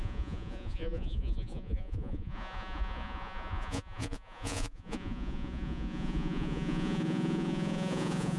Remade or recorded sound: remade